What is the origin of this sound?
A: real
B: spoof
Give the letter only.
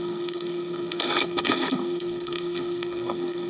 B